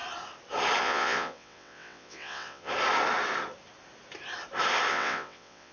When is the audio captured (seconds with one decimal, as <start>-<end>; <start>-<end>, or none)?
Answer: 0.0-0.8; 2.7-4.9